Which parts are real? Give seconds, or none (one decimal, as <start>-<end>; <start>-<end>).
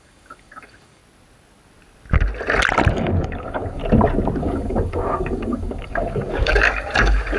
1.0-2.9; 3.8-4.4